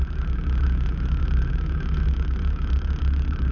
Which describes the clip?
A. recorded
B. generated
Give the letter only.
B